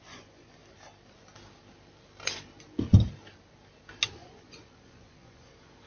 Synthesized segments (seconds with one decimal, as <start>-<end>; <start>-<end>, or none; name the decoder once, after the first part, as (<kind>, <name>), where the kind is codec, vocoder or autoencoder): 0.0-0.6 (vocoder, Vocos); 4.1-5.9